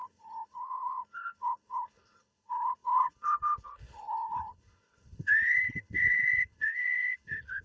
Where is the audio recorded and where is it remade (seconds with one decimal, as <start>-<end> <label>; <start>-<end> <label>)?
0.0-7.6 remade